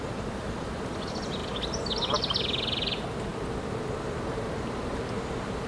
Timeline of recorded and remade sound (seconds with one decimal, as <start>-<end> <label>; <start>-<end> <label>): 0.0-5.7 recorded